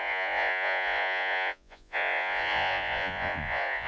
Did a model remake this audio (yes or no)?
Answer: yes